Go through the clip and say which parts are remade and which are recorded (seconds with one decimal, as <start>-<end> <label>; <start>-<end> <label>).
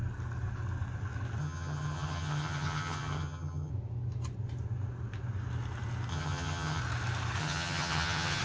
0.0-1.4 recorded; 1.4-3.7 remade; 3.7-6.1 recorded; 6.1-6.8 remade; 6.8-7.4 recorded; 7.4-8.4 remade